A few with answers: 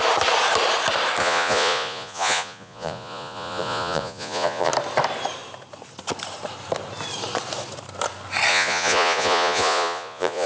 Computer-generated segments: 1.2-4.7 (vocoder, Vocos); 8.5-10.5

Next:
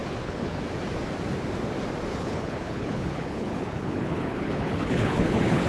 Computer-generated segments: 0.0-0.6 (codec, HILCodec); 2.1-5.7

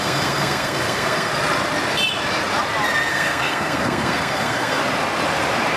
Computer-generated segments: 0.0-1.3 (codec, SNAC); 3.1-4.8

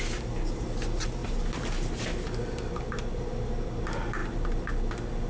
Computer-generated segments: none

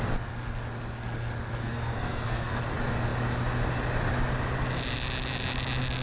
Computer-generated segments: 1.6-2.6 (codec, SNAC)

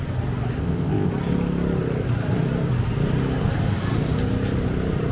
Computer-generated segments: 0.6-1.1 (codec, ZipCodec)

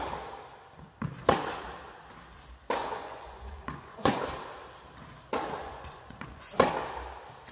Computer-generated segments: 2.8-4.2 (vocoder, Vocos); 5.6-6.7

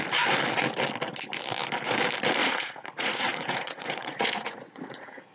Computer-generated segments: 2.4-5.3 (vocoder, Vocos)